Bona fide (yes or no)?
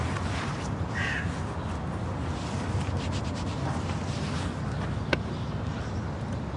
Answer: yes